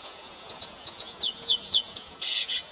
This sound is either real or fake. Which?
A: fake